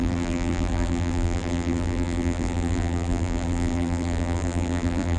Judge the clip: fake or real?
fake